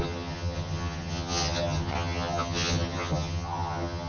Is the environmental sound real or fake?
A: fake